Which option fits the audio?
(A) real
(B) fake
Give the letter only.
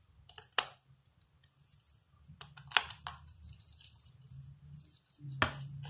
A